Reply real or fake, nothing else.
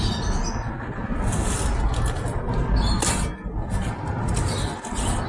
real